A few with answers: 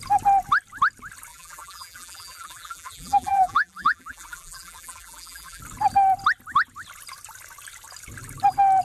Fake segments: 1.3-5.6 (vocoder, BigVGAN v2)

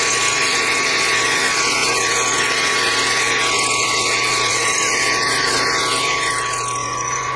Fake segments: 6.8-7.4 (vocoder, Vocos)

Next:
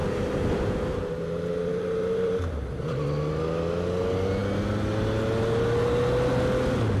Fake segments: 0.0-2.8 (vocoder, BigVGAN v2)